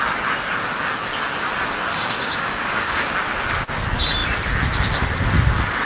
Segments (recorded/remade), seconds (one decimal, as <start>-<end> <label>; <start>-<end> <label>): 0.0-1.9 recorded; 1.9-3.1 remade; 3.1-5.9 recorded